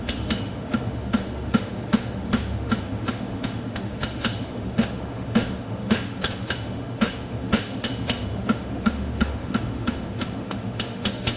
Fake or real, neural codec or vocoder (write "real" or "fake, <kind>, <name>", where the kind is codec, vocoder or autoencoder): fake, autoencoder, DAC-VAE